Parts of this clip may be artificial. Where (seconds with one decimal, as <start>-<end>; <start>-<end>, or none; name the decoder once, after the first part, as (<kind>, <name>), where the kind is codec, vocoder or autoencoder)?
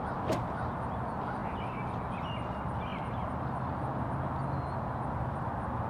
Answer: none